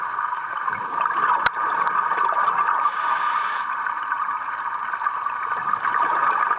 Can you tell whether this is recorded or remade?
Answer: recorded